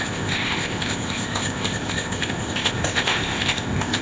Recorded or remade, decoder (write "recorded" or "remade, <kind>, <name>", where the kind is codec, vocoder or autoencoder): remade, codec, ZipCodec